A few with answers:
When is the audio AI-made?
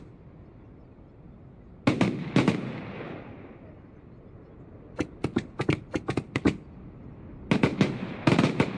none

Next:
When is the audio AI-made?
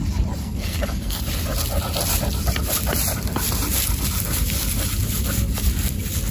0.4-1.2 (codec, SNAC)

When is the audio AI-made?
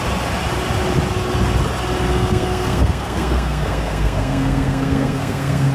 2.1-5.7 (codec, SNAC)